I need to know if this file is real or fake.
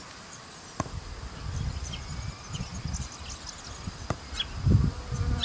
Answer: real